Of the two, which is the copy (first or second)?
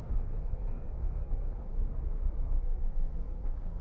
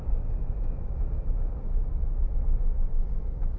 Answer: first